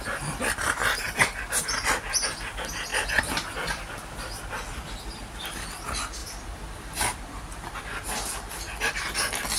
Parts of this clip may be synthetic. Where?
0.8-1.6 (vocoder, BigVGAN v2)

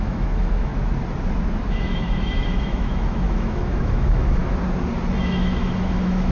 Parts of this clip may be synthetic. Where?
0.0-0.7 (autoencoder, DAC-VAE); 1.7-4.4; 5.2-6.3

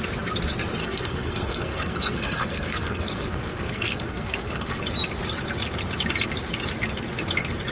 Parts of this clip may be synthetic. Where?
0.8-4.8 (codec, SNAC)

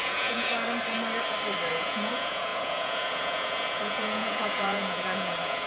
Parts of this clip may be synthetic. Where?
0.0-0.5 (vocoder, Vocos); 1.7-5.7

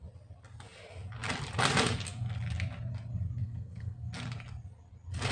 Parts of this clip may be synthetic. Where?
3.4-4.1 (codec, SNAC)

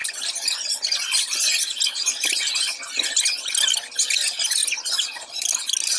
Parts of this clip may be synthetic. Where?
0.0-2.5 (vocoder, BigVGAN v2); 4.6-5.5

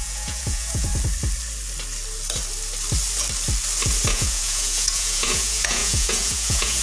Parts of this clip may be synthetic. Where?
0.0-0.9 (vocoder, Vocos); 4.1-6.8

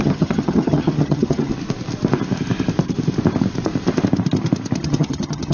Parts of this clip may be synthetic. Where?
0.0-1.5 (vocoder, HiFi-GAN); 4.8-5.5